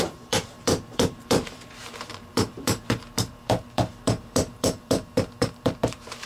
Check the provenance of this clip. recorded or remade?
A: remade